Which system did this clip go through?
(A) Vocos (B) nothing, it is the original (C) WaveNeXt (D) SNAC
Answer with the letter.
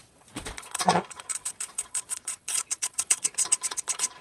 A